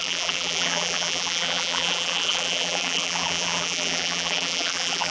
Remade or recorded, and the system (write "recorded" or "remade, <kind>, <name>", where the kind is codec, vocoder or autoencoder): remade, vocoder, BigVGAN v2